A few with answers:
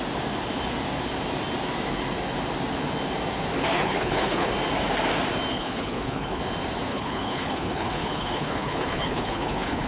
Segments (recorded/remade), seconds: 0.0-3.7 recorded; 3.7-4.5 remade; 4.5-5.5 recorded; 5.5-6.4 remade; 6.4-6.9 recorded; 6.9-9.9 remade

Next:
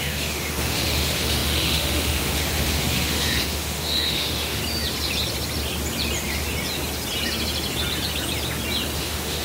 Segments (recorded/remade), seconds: 0.0-4.6 remade; 4.6-9.0 recorded; 9.0-9.4 remade